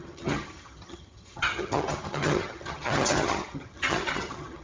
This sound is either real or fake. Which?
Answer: fake